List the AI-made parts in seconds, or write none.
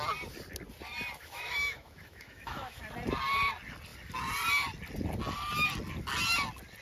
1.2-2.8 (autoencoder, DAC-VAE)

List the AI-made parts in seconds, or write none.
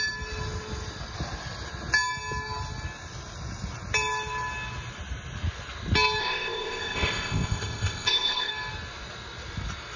6.2-8.5 (codec, ZipCodec)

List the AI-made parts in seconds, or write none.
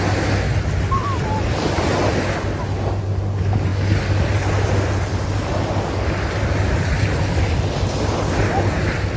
none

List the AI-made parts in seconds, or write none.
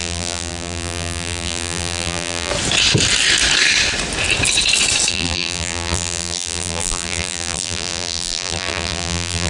0.0-2.5 (vocoder, BigVGAN v2); 5.1-9.5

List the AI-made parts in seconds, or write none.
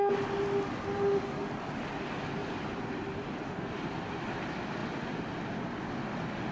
2.4-4.2 (vocoder, BigVGAN v2)